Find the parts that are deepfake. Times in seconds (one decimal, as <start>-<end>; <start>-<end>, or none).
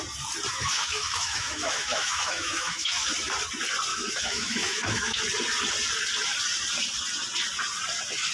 0.5-3.1; 3.9-5.2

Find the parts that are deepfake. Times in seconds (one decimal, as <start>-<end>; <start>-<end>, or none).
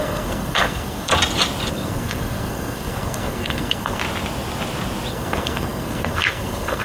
0.0-1.1; 1.7-4.0; 5.1-6.8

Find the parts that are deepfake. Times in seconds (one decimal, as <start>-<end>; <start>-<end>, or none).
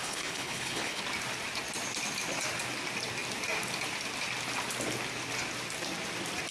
0.0-1.0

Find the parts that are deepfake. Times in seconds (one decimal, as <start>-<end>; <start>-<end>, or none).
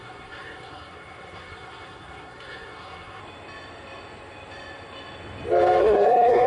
0.0-3.2; 5.8-6.5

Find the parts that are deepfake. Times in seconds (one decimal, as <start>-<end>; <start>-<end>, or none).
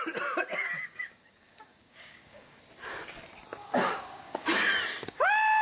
0.5-2.6; 3.6-4.7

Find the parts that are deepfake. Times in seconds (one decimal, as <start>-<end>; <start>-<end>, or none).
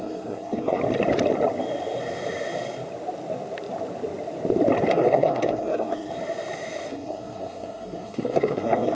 0.0-0.8; 4.9-6.1; 6.9-8.9